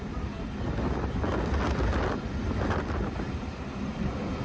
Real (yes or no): yes